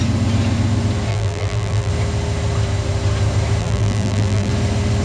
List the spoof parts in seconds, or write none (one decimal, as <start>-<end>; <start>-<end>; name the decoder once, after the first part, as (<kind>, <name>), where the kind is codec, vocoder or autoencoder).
1.1-1.9 (vocoder, BigVGAN v2); 3.6-4.5